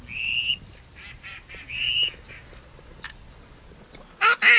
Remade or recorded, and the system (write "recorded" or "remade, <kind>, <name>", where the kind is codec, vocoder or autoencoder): recorded